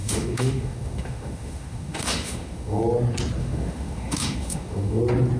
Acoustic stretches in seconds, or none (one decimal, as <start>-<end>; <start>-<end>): 2.8-3.4; 5.0-5.4